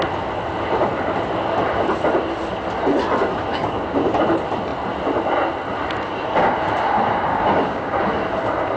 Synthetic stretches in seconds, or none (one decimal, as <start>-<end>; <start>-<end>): 3.5-4.1; 7.3-8.0